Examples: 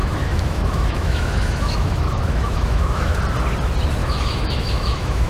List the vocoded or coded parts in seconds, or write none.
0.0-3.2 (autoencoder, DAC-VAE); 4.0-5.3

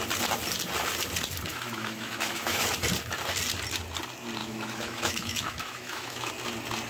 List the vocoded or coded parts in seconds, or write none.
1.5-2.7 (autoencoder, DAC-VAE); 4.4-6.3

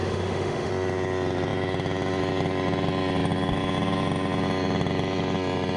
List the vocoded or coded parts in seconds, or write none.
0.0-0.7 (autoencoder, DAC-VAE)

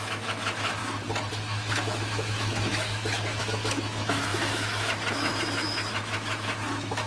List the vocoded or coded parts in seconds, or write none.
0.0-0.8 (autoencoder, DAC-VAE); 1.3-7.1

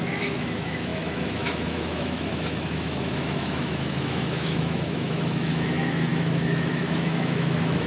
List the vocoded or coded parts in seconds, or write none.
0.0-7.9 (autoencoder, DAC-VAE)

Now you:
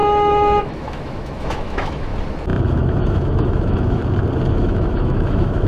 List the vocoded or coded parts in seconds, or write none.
0.0-2.1 (autoencoder, DAC-VAE); 2.7-4.0; 4.5-5.7